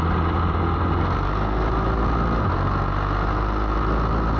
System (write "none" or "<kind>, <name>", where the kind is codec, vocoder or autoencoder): none